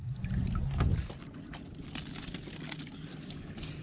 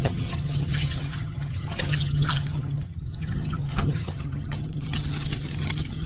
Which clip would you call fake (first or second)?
second